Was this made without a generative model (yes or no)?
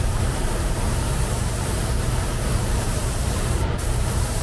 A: no